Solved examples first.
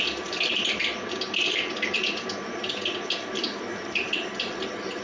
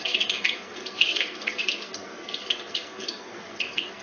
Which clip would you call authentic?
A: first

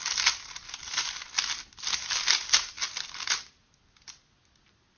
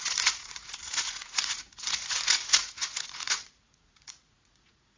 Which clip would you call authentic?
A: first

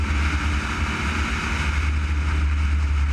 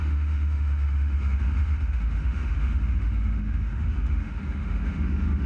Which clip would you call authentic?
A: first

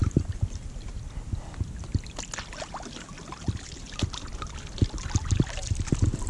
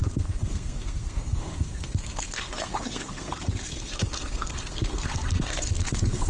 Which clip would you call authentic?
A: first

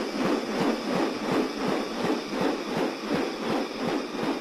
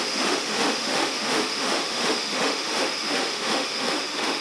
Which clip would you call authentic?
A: first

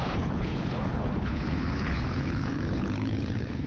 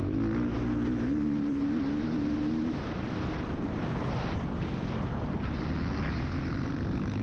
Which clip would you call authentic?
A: second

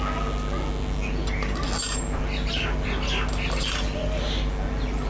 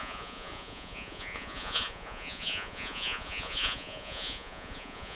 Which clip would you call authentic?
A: first